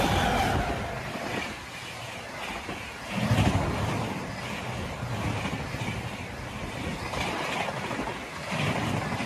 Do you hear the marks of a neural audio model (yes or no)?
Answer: no